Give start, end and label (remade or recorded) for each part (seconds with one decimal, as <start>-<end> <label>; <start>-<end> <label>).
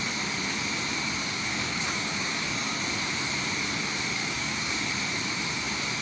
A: 0.0-1.2 recorded; 1.2-2.8 remade; 2.8-4.2 recorded; 4.2-4.9 remade; 4.9-6.0 recorded